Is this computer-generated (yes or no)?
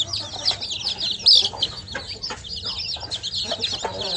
no